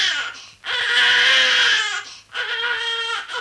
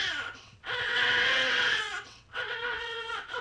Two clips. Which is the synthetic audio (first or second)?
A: second